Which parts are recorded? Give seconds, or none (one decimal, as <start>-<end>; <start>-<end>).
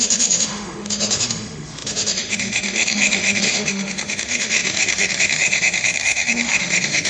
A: none